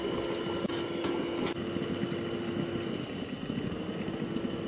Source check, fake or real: real